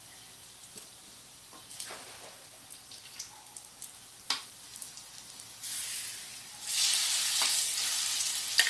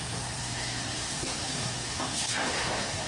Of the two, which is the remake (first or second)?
second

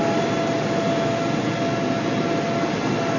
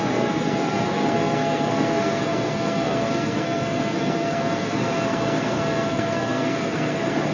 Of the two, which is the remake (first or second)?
second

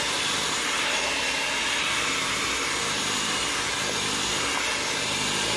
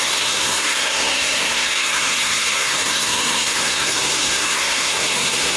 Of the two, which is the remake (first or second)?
second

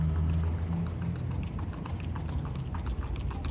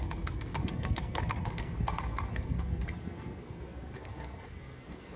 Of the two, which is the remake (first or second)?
second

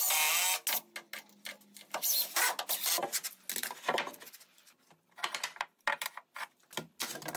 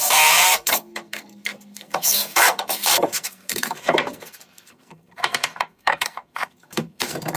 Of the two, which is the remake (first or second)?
second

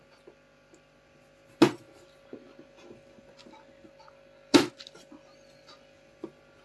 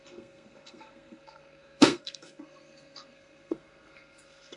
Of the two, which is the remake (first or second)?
second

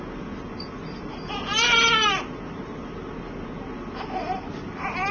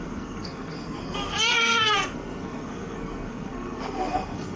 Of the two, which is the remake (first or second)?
second